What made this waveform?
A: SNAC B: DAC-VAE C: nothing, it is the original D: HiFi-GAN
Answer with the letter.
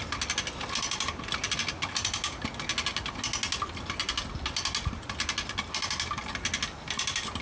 C